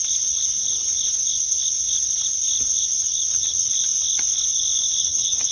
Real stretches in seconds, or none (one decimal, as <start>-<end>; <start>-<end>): 0.0-3.3; 3.7-5.0